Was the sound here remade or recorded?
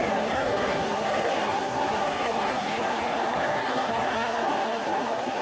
remade